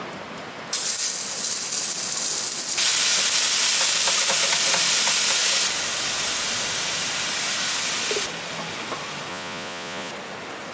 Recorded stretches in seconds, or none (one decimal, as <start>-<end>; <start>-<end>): 0.0-9.3; 10.1-10.7